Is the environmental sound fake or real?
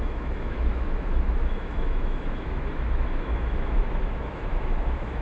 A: fake